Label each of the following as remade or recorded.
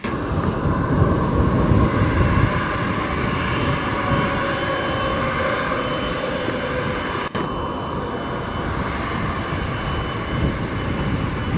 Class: recorded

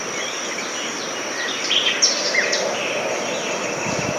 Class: recorded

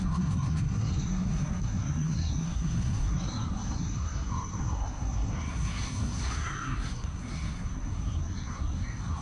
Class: remade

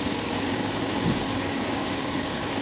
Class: remade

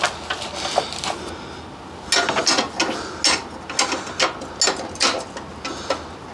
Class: recorded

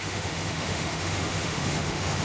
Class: remade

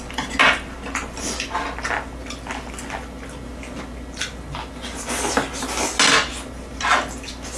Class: recorded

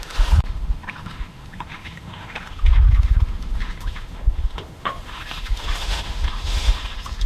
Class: remade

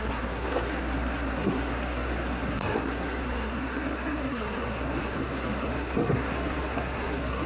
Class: remade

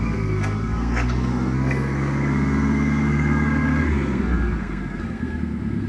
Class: remade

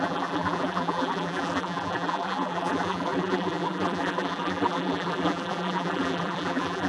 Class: remade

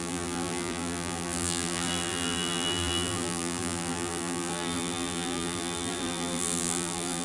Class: remade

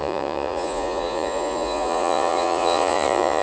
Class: remade